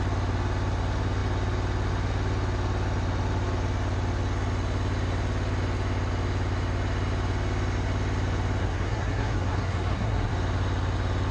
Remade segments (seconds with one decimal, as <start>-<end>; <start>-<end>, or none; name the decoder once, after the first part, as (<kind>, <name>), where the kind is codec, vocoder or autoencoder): 8.6-10.3 (codec, SNAC)